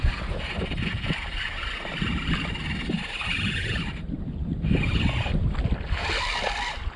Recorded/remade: recorded